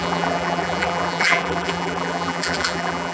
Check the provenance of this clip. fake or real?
fake